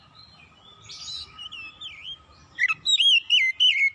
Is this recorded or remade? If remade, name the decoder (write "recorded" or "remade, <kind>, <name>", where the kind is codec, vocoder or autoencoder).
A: recorded